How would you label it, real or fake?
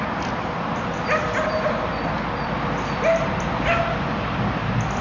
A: real